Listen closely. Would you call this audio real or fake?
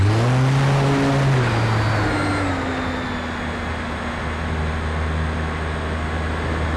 real